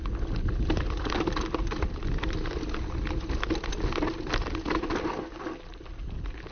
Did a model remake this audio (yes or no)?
no